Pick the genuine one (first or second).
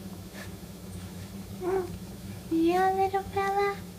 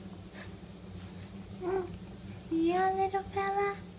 second